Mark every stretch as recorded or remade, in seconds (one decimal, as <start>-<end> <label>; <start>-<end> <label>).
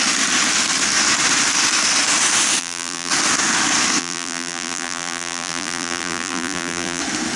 0.0-2.6 recorded; 2.6-3.1 remade; 3.1-4.0 recorded; 4.0-7.0 remade; 7.0-7.4 recorded